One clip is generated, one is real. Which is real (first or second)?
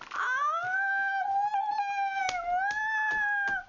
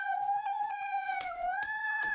first